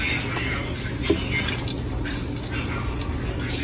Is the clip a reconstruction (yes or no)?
no